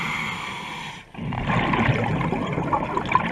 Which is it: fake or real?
real